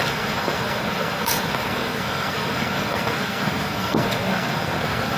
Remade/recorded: remade